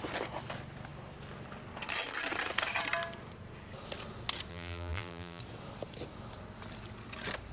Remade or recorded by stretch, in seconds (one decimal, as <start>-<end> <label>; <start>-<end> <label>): 0.0-4.5 recorded; 4.5-5.4 remade; 5.4-7.5 recorded